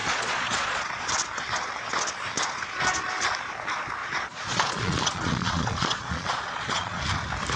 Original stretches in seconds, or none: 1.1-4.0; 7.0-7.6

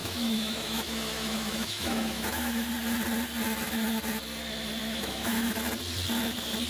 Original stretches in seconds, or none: 2.7-4.8; 5.6-6.7

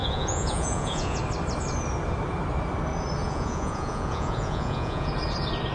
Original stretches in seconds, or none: 1.2-3.2; 5.1-5.7

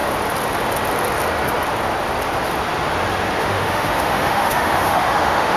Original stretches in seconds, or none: 0.0-3.4

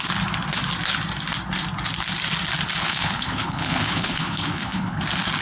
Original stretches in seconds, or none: 0.0-2.8; 5.0-5.4

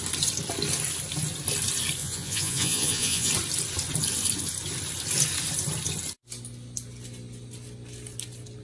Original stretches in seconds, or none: 0.0-2.0; 3.3-8.6

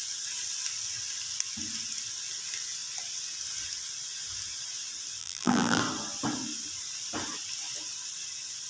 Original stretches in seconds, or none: 0.0-5.2; 5.8-8.7

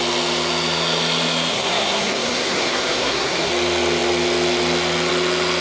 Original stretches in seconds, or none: 0.0-1.5; 3.5-5.6